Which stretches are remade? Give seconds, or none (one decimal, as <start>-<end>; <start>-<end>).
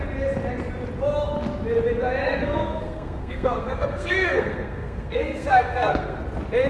2.2-6.2